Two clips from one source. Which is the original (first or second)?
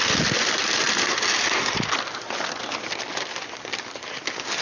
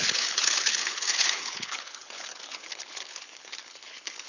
first